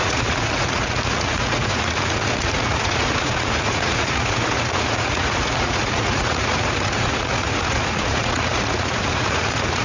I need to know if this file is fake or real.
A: fake